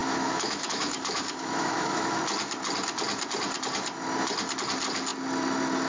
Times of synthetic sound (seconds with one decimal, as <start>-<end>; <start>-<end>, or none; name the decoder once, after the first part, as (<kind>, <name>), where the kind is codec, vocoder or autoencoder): 0.0-2.2 (autoencoder, DAC-VAE)